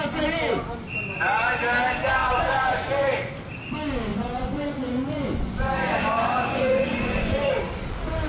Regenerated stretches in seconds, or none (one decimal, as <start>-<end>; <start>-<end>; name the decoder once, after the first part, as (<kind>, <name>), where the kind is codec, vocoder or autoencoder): 2.2-3.3 (vocoder, Vocos); 4.1-7.5